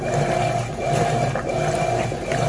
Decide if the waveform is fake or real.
real